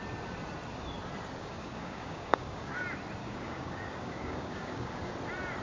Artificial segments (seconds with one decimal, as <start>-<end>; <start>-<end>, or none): 1.4-2.7; 3.2-5.1